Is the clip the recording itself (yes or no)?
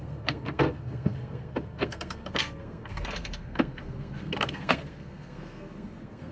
no